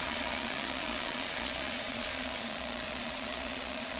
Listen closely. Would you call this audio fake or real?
fake